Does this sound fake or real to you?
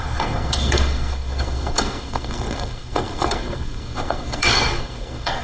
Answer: fake